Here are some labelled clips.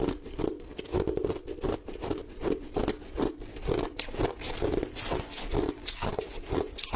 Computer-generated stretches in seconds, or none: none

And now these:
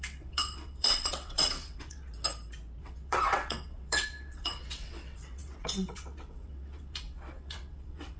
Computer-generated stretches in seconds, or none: 0.0-2.1 (vocoder, WaveNeXt); 2.8-8.2

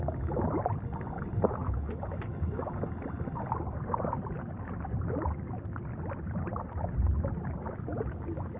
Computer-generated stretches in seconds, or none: 1.6-2.7 (autoencoder, DAC-VAE)

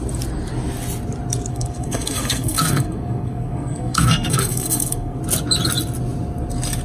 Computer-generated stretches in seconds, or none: 1.5-5.2 (codec, SNAC)